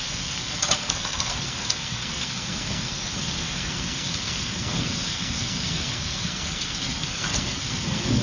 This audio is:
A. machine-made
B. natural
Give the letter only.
A